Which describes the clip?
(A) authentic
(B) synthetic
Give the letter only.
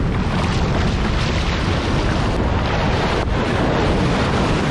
A